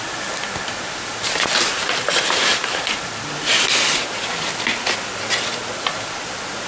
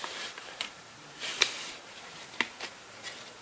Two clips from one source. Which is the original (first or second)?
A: first